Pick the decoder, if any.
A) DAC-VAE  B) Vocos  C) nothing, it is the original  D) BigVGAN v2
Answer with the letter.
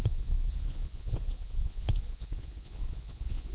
B